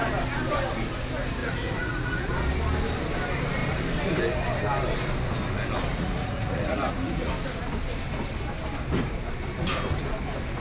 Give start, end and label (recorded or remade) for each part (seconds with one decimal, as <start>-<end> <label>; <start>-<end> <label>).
0.0-1.4 recorded; 1.4-2.3 remade; 2.3-5.9 recorded; 5.9-7.3 remade; 7.3-10.6 recorded